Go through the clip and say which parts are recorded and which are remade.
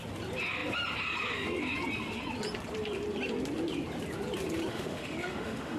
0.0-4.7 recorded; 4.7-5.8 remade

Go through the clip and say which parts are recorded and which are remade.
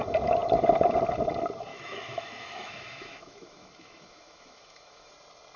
0.0-1.7 recorded; 1.7-5.1 remade; 5.1-5.6 recorded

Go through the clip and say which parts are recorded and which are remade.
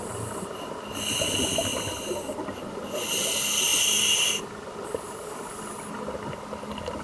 0.0-7.0 recorded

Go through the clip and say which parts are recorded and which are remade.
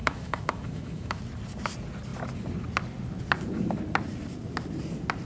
0.0-1.2 remade; 1.2-5.3 recorded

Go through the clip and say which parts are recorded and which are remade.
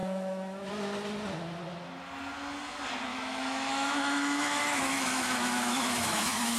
0.0-0.7 remade; 0.7-3.1 recorded; 3.1-6.6 remade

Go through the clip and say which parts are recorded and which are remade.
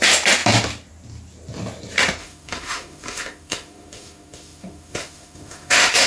0.0-2.2 recorded; 2.2-6.1 remade